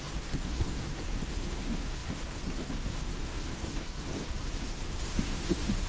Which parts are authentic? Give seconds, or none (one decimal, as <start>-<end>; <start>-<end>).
none